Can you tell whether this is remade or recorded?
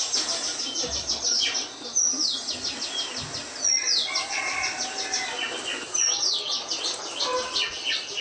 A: recorded